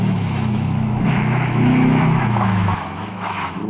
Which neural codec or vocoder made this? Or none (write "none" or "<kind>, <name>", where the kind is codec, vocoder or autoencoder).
autoencoder, DAC-VAE